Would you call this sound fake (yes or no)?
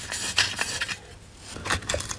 no